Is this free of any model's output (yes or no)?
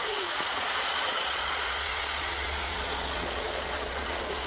no